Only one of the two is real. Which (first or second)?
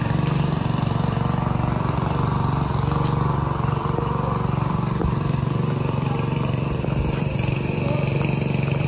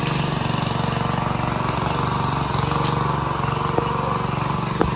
second